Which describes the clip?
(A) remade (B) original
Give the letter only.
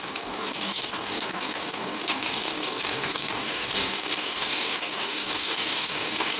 A